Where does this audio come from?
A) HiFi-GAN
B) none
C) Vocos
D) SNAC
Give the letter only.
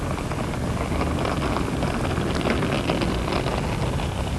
B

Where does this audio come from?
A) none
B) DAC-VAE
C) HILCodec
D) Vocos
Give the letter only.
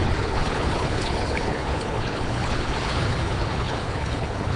C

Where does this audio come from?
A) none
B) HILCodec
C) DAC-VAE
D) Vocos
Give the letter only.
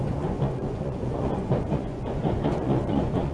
D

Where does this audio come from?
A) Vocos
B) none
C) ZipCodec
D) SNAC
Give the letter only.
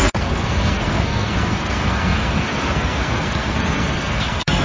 D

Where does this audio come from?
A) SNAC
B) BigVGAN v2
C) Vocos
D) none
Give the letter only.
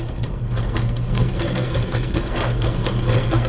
A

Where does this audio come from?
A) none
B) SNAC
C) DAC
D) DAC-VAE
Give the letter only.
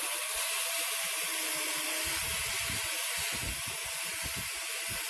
A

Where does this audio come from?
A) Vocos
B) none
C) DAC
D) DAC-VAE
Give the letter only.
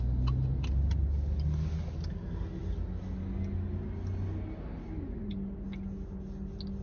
B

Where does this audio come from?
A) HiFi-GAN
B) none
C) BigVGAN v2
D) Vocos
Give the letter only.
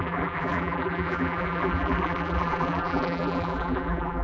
C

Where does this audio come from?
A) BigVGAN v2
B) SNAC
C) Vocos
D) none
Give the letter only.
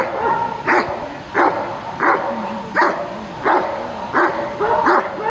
D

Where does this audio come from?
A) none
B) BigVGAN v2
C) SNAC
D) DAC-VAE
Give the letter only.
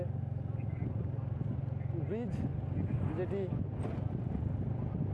A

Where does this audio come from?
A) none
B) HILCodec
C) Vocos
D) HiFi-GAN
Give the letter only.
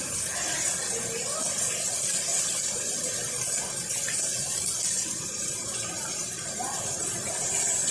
A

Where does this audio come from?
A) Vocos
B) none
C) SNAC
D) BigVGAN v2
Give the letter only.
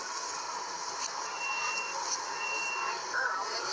B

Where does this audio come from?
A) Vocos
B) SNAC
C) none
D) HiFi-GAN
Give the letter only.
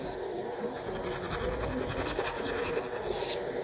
C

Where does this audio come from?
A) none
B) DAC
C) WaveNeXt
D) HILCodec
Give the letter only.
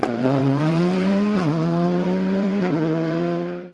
C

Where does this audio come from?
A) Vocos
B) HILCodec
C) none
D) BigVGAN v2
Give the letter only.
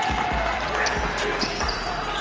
D